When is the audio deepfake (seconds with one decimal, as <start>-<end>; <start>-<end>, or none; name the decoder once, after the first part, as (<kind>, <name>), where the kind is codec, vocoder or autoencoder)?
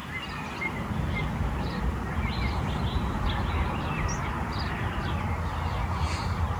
none